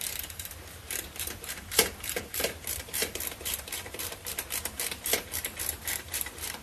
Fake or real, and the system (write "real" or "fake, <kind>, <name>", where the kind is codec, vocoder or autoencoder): fake, vocoder, BigVGAN v2